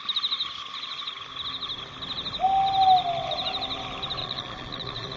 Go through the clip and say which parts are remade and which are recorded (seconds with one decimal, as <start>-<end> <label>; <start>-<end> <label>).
0.0-4.2 recorded; 4.2-5.2 remade